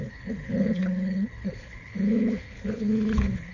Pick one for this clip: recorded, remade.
remade